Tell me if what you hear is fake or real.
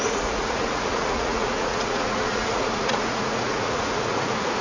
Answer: fake